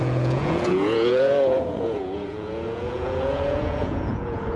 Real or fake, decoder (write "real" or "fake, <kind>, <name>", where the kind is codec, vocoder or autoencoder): fake, vocoder, Vocos